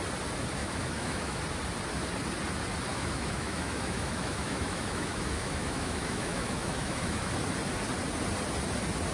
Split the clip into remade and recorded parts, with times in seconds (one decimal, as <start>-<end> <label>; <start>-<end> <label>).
0.0-0.6 recorded; 0.6-1.4 remade; 1.4-2.9 recorded; 2.9-7.3 remade; 7.3-9.1 recorded